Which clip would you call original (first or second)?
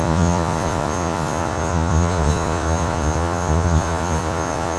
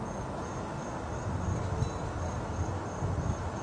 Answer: second